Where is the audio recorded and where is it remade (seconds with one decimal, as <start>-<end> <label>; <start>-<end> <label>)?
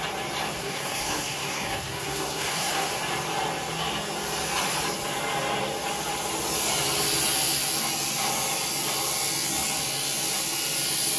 0.0-0.6 recorded; 0.6-2.9 remade; 2.9-11.2 recorded